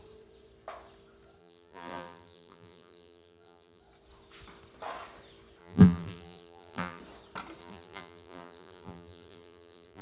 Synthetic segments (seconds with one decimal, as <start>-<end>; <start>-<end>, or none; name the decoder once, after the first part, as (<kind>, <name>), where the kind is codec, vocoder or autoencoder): 1.4-3.8 (vocoder, BigVGAN v2); 5.6-7.0; 7.6-10.0